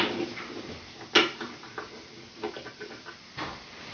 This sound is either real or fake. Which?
real